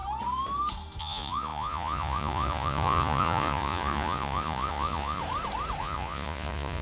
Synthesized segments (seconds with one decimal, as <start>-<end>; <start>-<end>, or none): 1.0-5.2; 5.8-6.8